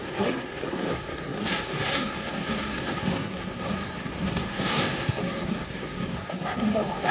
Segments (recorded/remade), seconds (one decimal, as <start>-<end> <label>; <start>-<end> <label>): 0.0-7.1 remade